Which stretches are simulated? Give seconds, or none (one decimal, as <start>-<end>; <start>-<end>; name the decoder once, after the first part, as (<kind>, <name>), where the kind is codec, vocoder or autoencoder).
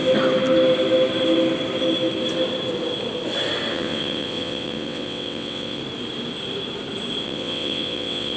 3.7-5.8 (vocoder, WaveNeXt); 7.2-8.4